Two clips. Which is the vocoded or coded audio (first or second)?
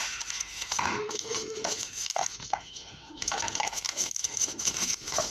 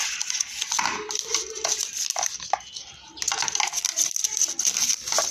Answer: first